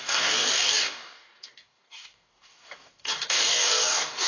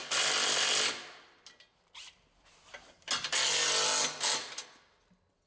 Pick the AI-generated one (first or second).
first